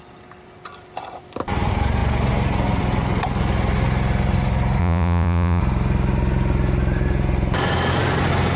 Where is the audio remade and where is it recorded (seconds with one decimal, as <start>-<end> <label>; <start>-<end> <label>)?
0.0-4.8 recorded; 4.8-5.6 remade; 5.6-8.6 recorded